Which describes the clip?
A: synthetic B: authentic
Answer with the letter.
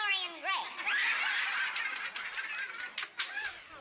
B